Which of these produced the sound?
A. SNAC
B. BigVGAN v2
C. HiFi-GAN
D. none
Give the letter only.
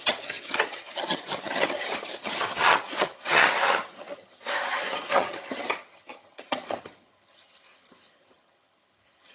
C